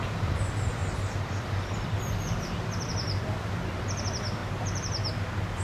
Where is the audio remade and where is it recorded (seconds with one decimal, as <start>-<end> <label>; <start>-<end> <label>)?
0.0-0.8 remade; 0.8-1.4 recorded; 1.4-4.4 remade; 4.4-5.6 recorded